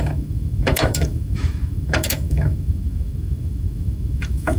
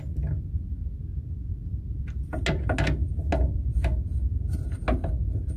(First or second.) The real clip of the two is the second